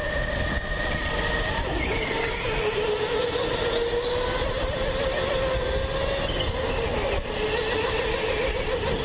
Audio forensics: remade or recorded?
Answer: recorded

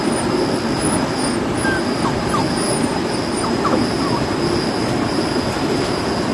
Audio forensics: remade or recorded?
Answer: recorded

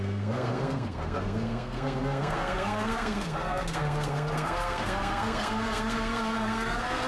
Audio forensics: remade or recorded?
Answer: remade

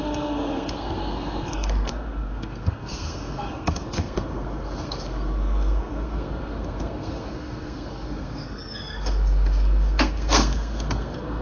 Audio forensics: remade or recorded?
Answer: remade